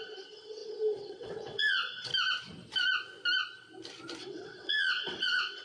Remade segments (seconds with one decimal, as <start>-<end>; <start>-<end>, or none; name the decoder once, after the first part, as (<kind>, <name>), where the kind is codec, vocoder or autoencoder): 0.0-2.1 (vocoder, WaveNeXt); 4.2-5.6